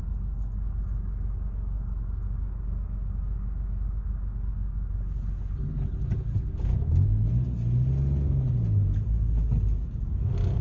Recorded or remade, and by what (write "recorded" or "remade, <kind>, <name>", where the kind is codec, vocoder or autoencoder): recorded